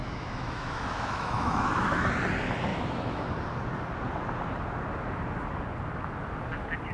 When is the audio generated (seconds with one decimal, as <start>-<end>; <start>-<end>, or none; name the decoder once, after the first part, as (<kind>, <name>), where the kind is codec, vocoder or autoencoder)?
0.0-2.1 (autoencoder, DAC-VAE); 2.7-3.3